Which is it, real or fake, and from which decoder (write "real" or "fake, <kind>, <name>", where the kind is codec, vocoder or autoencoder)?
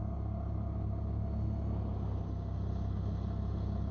real